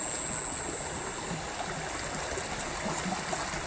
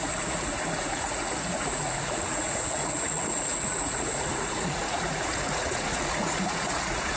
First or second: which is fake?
second